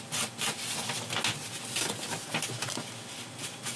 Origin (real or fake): real